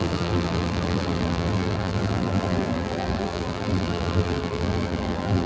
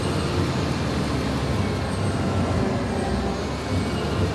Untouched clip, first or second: second